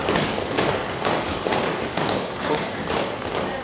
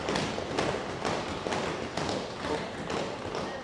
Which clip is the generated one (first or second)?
first